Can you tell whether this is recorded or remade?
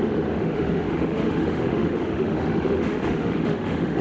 remade